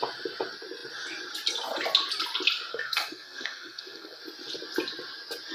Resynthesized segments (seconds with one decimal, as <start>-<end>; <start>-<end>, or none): 2.7-4.2